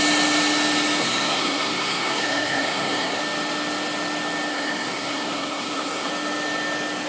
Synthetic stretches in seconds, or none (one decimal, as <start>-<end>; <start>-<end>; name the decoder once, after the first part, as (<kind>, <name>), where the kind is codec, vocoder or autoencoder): 1.0-3.2 (codec, SNAC); 4.5-6.1